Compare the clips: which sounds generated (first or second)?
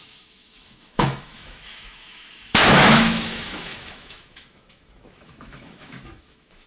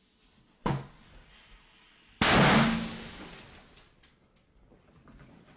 first